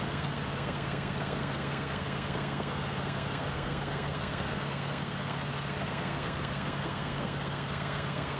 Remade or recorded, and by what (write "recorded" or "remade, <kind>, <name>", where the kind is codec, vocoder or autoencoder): remade, codec, SNAC